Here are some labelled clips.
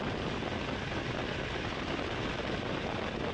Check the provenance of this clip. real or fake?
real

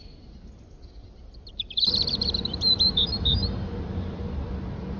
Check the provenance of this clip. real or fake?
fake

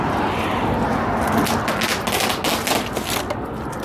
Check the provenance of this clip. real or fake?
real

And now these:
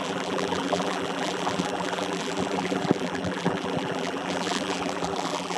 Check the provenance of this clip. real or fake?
fake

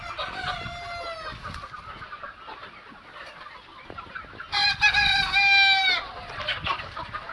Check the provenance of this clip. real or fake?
real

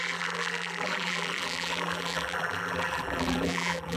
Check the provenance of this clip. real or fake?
fake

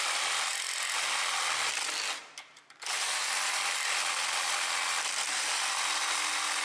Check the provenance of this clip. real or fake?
real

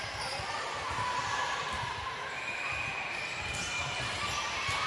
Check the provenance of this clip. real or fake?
fake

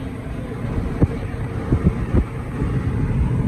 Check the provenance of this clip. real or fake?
real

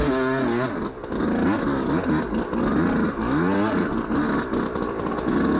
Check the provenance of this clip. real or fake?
real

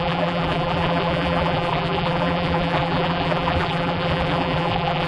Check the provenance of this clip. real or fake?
fake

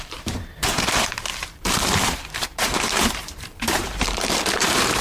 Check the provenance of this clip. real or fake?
fake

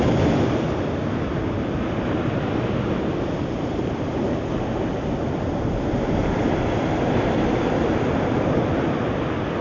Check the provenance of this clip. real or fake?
real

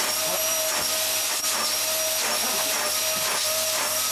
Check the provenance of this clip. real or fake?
real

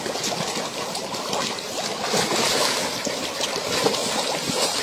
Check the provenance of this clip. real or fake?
real